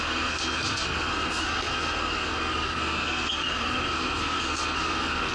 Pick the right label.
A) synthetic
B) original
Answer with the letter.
A